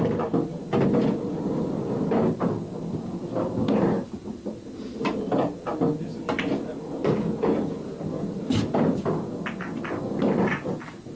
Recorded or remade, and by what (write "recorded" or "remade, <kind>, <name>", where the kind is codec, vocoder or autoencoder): recorded